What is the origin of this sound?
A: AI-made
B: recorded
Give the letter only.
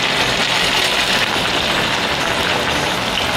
B